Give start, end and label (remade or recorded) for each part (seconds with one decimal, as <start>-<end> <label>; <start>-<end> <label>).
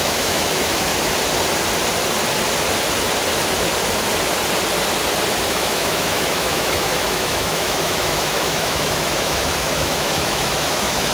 0.0-0.9 remade; 0.9-5.5 recorded; 5.5-11.1 remade